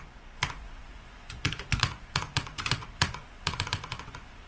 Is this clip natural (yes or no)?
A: no